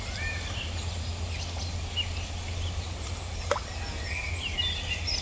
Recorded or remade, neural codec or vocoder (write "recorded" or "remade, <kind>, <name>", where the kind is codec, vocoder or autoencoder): recorded